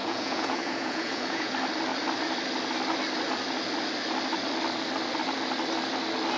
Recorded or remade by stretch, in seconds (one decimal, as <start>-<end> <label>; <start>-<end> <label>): 0.0-1.5 remade; 1.5-6.4 recorded

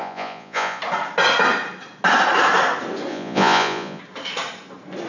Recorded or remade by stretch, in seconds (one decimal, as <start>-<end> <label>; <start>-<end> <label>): 0.0-0.8 remade; 0.8-3.1 recorded; 3.1-4.0 remade; 4.0-5.1 recorded

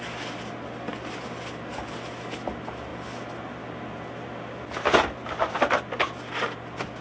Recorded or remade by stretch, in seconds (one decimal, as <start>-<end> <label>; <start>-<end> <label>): 0.0-7.0 recorded

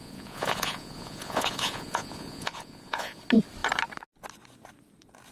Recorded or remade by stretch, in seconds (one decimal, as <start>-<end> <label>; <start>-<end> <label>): 0.0-3.2 remade; 3.2-5.3 recorded

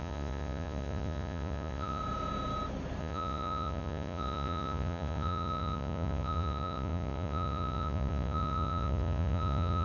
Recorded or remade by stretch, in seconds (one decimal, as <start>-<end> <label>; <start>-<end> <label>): 0.0-2.0 remade; 2.0-3.0 recorded; 3.0-9.8 remade